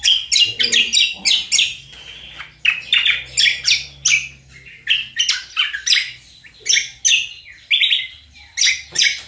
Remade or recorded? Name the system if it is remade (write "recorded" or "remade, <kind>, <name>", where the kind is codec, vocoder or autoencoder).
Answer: recorded